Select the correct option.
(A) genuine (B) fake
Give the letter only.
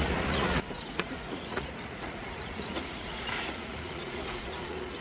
B